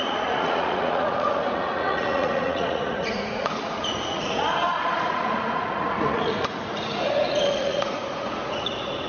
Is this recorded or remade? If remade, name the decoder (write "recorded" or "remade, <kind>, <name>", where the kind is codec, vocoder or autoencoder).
remade, vocoder, Vocos